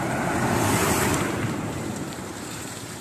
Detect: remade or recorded remade